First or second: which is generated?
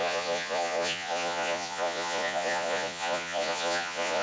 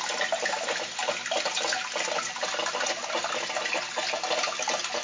first